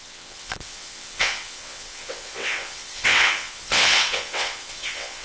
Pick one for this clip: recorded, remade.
remade